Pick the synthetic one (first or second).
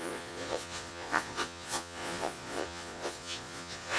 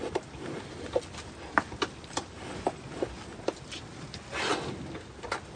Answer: first